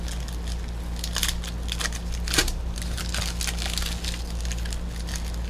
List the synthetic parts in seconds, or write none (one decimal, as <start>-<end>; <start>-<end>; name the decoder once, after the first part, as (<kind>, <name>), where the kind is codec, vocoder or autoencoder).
2.4-3.0 (vocoder, BigVGAN v2)